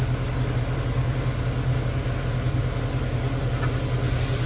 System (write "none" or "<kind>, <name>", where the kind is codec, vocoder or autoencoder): none